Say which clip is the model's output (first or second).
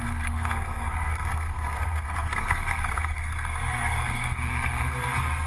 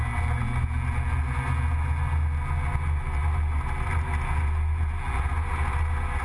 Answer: first